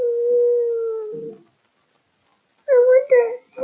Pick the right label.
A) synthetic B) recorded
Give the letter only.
B